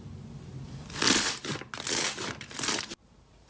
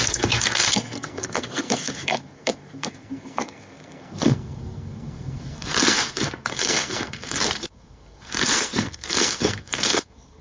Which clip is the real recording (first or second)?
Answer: first